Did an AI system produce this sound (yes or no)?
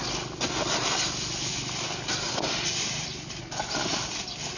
no